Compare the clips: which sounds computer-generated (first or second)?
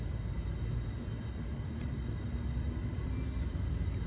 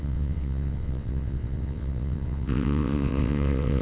second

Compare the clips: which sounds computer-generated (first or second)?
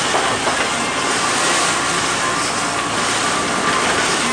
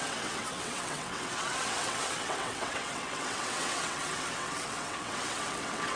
second